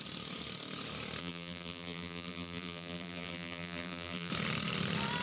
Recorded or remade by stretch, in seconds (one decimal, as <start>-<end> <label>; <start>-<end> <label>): 0.0-1.2 recorded; 1.2-4.3 remade; 4.3-5.2 recorded